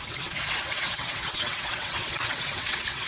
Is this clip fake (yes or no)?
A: yes